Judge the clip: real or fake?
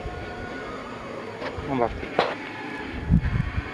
real